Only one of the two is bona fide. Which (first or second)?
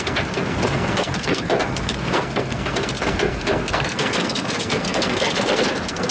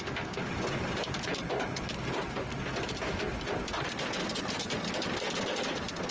second